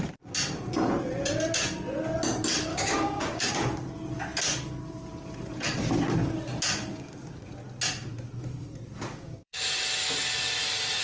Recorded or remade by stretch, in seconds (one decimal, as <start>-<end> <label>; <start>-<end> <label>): 0.0-2.7 recorded; 2.7-3.5 remade; 3.5-6.9 recorded; 6.9-7.5 remade; 7.5-9.1 recorded; 9.1-9.6 remade; 9.6-11.0 recorded